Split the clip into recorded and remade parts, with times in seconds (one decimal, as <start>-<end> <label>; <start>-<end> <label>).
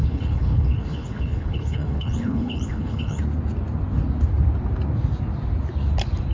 0.0-3.2 remade; 3.2-6.3 recorded